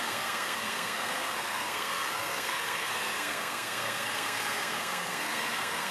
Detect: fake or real fake